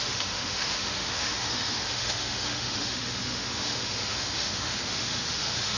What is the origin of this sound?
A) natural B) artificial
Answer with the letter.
B